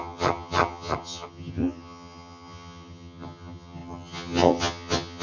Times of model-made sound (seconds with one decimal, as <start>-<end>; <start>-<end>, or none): 0.0-5.2